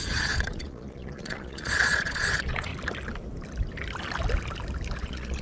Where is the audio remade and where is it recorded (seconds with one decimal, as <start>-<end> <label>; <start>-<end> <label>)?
0.0-2.7 remade; 2.7-5.0 recorded; 5.0-5.4 remade